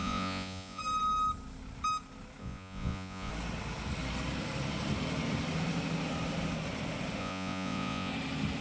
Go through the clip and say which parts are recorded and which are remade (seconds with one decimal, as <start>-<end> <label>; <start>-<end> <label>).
0.0-0.8 remade; 0.8-2.4 recorded; 2.4-3.3 remade; 3.3-7.2 recorded; 7.2-8.1 remade; 8.1-8.6 recorded